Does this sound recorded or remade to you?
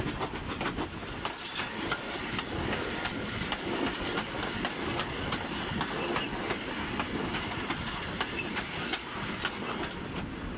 recorded